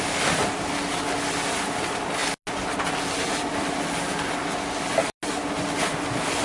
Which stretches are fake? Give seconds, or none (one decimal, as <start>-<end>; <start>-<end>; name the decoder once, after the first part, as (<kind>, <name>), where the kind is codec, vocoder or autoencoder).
none